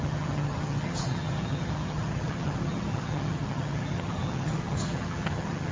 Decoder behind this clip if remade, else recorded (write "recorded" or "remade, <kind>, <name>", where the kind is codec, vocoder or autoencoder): remade, vocoder, HiFi-GAN